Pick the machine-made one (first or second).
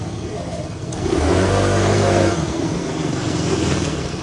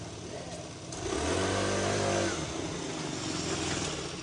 first